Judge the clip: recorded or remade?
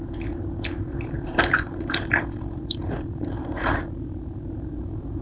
remade